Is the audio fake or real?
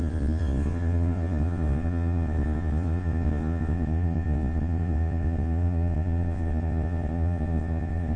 fake